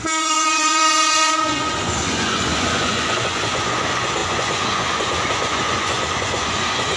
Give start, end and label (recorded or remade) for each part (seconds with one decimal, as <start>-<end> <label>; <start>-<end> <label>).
0.0-7.0 remade